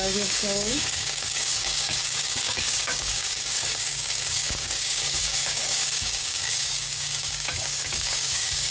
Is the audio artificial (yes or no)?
yes